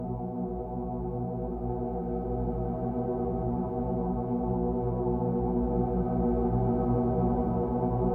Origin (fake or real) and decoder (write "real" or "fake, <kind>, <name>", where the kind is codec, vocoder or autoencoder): real